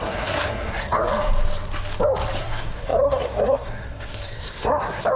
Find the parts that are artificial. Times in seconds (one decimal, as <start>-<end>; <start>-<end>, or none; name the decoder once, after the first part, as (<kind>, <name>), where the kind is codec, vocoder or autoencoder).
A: 0.0-1.1 (codec, SNAC); 2.4-5.2